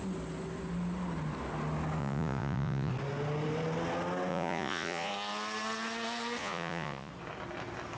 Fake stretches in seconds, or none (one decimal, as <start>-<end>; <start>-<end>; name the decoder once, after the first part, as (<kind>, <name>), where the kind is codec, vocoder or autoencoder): 2.0-2.9 (vocoder, Vocos); 4.3-5.1; 6.4-7.1